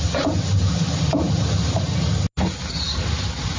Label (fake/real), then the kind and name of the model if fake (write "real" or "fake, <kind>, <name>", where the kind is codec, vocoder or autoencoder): real